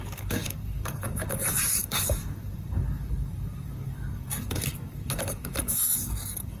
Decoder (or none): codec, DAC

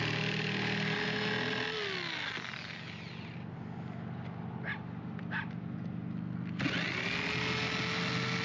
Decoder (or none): none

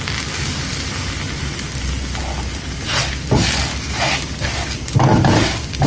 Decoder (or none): none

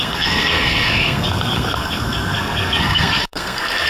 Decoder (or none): codec, SNAC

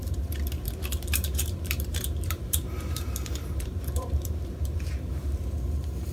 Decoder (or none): vocoder, BigVGAN v2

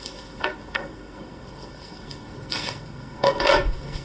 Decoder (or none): codec, SNAC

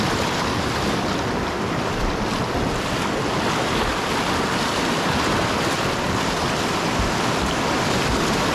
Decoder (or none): none